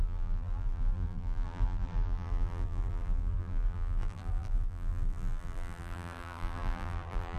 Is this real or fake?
fake